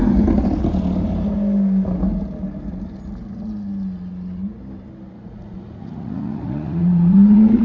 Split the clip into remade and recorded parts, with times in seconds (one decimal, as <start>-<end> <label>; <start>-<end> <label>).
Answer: 0.0-5.2 recorded; 5.2-7.6 remade